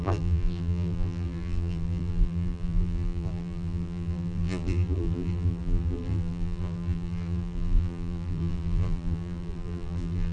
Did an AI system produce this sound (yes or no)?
yes